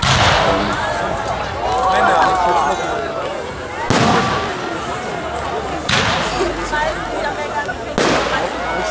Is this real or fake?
real